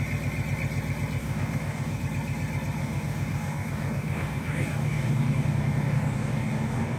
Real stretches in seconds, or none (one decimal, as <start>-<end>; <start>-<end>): 0.0-1.2; 2.0-2.8